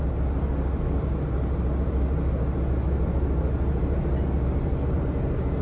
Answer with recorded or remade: recorded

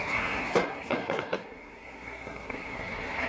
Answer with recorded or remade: remade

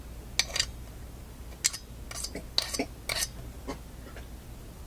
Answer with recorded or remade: recorded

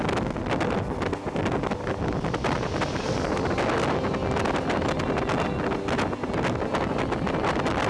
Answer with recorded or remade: recorded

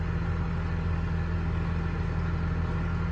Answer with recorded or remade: recorded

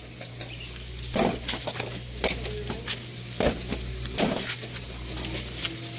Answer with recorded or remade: recorded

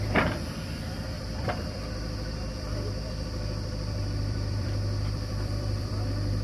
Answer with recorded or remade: remade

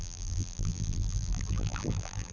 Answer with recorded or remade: remade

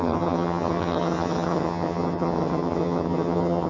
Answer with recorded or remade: remade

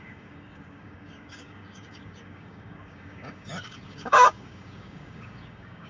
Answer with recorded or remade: remade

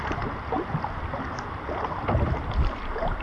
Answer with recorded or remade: recorded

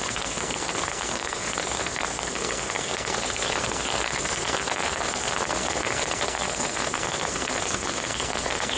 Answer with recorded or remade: remade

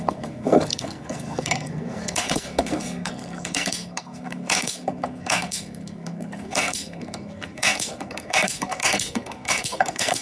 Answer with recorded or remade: remade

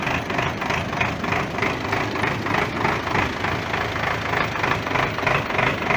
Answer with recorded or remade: recorded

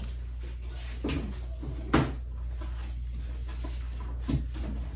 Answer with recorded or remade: recorded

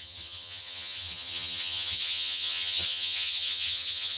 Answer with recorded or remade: remade